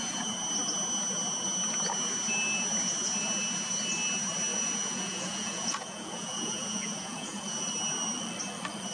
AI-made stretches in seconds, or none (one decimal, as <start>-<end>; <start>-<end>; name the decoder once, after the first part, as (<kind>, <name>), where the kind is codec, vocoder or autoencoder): 4.5-7.7 (vocoder, Vocos)